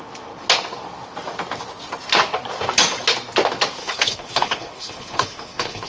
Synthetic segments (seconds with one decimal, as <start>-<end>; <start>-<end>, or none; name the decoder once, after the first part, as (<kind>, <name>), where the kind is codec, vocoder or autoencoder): 3.8-5.9 (codec, HILCodec)